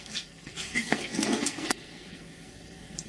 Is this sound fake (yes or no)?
yes